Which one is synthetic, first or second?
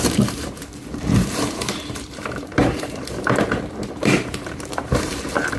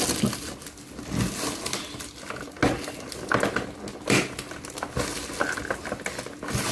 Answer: first